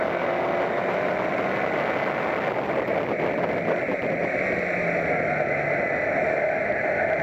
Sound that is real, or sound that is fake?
real